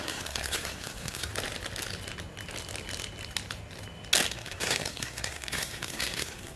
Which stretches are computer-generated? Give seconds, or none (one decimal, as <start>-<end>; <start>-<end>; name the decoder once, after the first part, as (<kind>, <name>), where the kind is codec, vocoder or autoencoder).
0.0-1.3 (codec, SNAC); 4.3-6.6